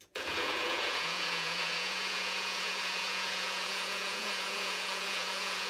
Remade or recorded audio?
remade